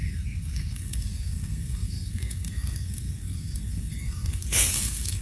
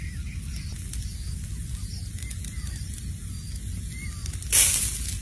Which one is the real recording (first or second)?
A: second